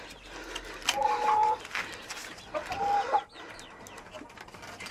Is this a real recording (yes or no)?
yes